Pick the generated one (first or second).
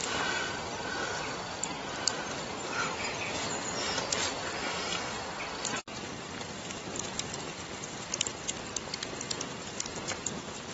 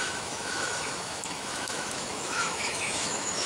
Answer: second